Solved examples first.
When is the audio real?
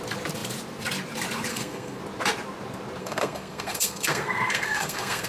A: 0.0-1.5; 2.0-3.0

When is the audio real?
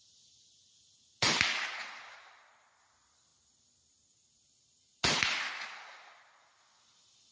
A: 0.0-7.3